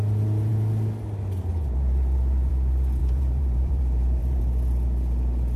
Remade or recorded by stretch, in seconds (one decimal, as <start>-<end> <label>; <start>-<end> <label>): 0.0-3.0 recorded; 3.0-4.4 remade; 4.4-5.6 recorded